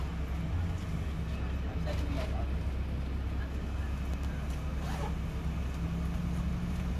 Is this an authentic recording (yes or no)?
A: yes